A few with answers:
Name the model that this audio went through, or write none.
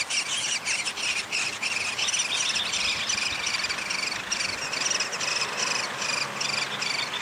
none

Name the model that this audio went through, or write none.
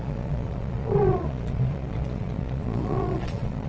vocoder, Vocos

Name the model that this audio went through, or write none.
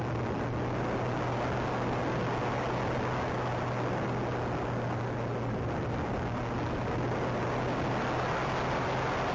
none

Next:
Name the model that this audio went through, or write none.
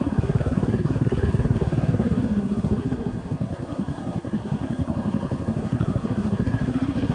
codec, SNAC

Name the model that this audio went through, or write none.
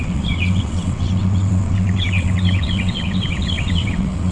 vocoder, WaveNeXt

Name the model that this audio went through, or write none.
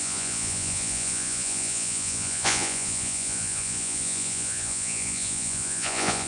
vocoder, Vocos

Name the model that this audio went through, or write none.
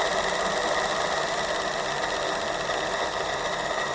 none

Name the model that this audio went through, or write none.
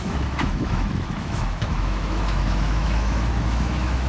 autoencoder, DAC-VAE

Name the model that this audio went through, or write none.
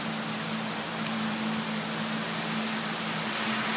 none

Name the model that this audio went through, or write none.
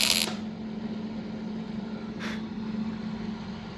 none